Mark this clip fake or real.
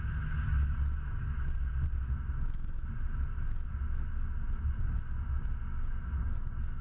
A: real